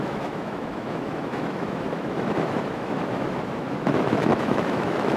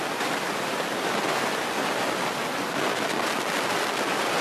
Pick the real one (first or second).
second